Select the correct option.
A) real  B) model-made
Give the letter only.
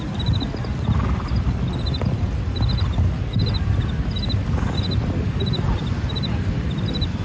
A